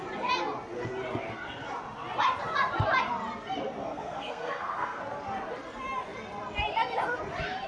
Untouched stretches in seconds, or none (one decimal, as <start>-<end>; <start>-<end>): 0.0-3.8; 5.0-7.7